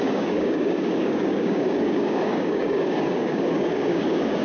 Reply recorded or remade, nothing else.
remade